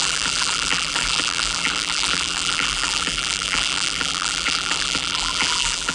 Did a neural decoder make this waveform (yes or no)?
yes